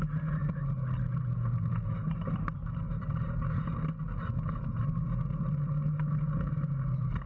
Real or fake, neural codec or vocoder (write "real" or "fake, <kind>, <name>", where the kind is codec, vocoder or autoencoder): real